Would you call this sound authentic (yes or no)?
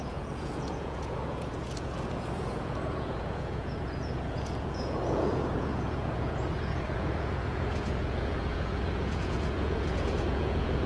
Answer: no